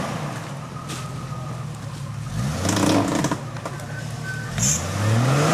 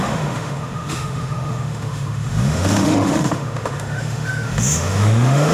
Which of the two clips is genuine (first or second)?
first